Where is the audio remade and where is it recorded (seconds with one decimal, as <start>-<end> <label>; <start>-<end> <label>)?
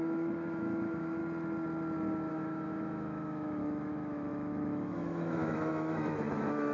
0.0-1.2 remade; 1.2-2.3 recorded; 2.3-6.7 remade